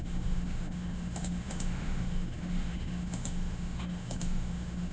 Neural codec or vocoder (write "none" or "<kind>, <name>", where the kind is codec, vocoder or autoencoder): autoencoder, DAC-VAE